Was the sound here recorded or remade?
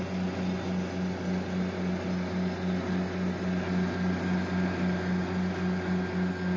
recorded